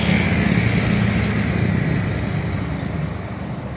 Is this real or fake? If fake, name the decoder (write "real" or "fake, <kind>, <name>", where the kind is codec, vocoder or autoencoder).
real